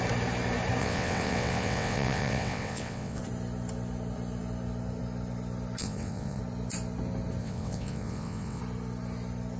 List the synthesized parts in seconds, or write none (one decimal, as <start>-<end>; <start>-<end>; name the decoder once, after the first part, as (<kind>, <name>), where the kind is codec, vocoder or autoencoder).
0.8-3.2 (vocoder, WaveNeXt); 5.8-6.4; 7.4-8.6

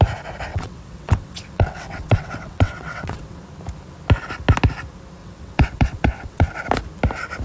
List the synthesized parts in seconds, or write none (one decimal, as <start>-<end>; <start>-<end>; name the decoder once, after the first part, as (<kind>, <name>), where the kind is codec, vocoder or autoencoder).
0.5-3.4 (vocoder, WaveNeXt); 5.2-6.5

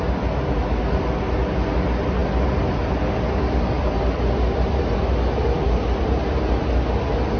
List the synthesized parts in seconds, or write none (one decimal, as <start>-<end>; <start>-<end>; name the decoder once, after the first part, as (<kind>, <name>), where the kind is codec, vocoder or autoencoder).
none

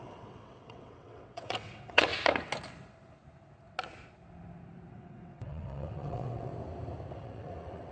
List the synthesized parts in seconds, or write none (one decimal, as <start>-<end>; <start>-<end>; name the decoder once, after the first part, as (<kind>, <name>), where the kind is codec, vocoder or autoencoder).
0.0-2.1 (vocoder, WaveNeXt); 4.9-6.5; 7.1-7.9